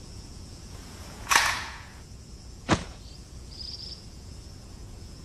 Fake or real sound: fake